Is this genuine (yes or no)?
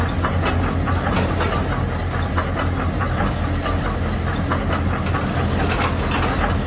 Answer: yes